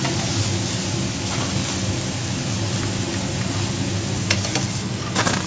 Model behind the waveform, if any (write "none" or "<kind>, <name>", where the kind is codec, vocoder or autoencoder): none